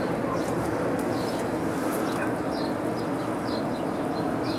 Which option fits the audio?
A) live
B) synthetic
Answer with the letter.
A